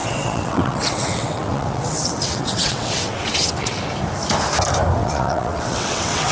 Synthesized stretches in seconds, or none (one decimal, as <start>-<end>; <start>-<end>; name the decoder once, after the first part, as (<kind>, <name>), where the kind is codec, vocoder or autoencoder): 0.0-3.8 (vocoder, WaveNeXt); 5.0-6.3